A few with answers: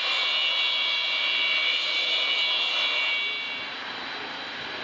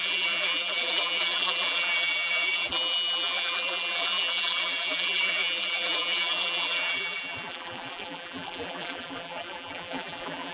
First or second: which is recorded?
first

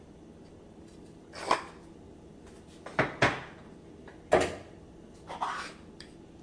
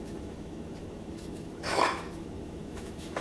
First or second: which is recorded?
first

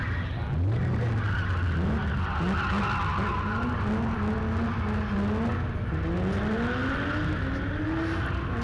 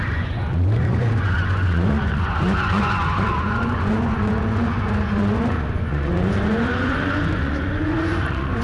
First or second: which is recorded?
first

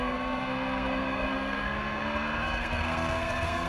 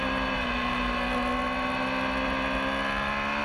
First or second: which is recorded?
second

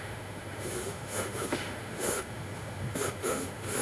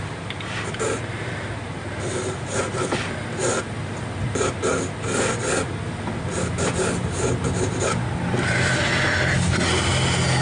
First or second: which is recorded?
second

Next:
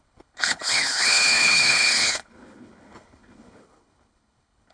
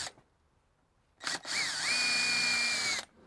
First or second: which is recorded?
second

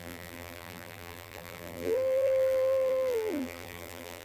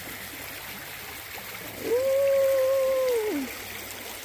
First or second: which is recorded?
second